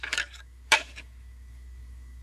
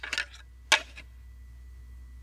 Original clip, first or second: second